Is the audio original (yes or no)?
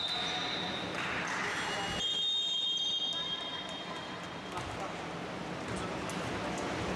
yes